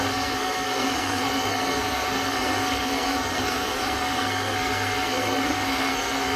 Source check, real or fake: fake